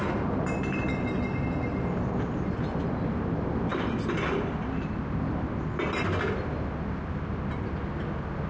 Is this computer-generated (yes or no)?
no